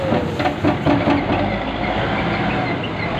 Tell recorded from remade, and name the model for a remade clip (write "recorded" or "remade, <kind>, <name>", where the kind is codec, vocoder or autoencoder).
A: recorded